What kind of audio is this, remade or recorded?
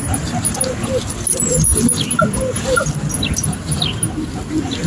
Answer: recorded